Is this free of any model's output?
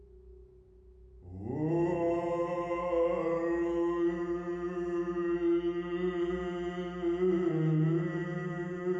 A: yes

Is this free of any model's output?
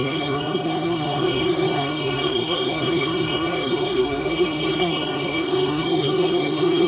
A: no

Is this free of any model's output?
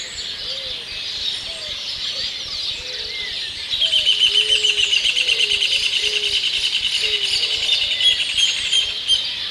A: yes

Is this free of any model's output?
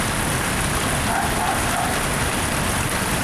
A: yes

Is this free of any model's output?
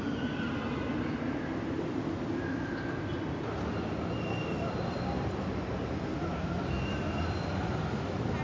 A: yes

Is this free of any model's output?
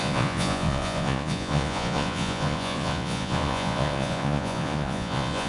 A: no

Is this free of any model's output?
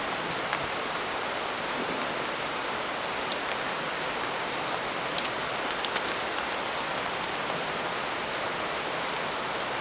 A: yes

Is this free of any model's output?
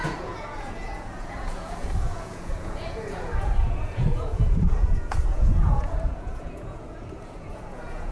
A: no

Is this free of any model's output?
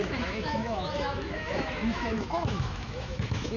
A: no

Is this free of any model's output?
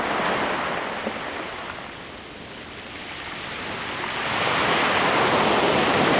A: yes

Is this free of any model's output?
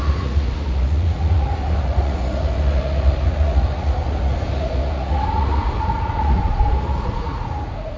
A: no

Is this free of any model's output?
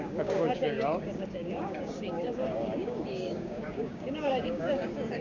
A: no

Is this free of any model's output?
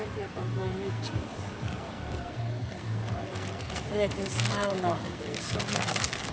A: no